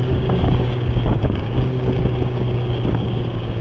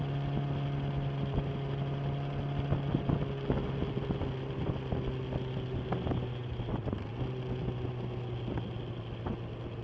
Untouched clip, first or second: second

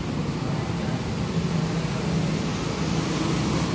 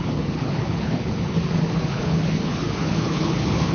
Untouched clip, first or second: first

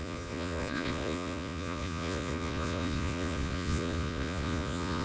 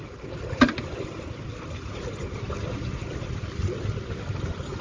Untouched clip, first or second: second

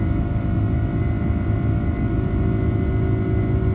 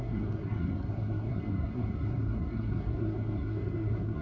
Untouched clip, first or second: first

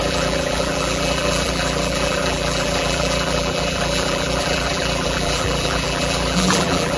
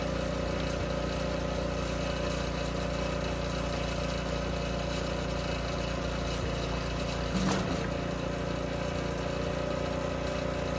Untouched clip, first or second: second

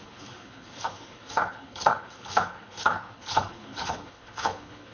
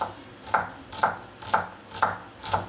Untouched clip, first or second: second